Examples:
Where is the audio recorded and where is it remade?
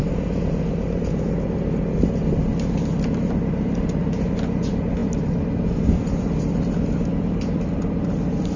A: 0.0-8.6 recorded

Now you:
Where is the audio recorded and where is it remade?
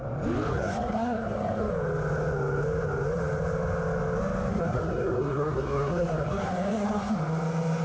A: 0.0-0.5 recorded; 0.5-1.7 remade; 1.7-4.5 recorded; 4.5-7.1 remade; 7.1-7.8 recorded